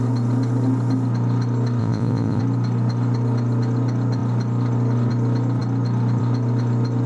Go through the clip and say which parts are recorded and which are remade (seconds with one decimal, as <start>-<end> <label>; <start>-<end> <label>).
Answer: 0.0-1.8 recorded; 1.8-2.4 remade; 2.4-7.1 recorded